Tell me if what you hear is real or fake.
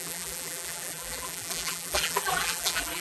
fake